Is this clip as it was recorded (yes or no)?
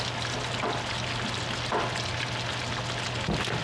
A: yes